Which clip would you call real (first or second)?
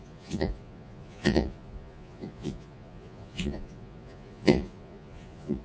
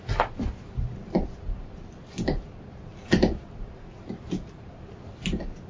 second